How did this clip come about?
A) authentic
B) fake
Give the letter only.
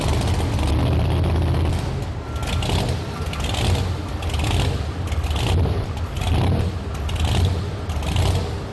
A